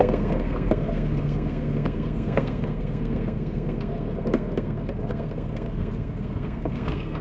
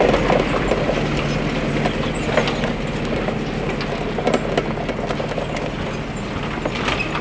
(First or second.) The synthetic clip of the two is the first